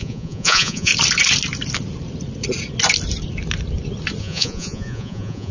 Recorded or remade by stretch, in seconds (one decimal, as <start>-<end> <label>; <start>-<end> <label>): 0.0-0.9 remade; 0.9-4.2 recorded; 4.2-5.5 remade